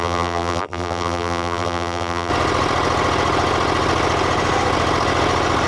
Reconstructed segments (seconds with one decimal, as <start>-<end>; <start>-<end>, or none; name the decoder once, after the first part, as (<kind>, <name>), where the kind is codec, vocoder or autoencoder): 0.0-2.3 (vocoder, BigVGAN v2)